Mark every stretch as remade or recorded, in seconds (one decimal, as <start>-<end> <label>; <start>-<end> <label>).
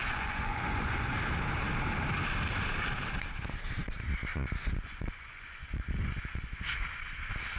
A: 0.0-1.1 remade; 1.1-4.3 recorded; 4.3-6.5 remade; 6.5-7.6 recorded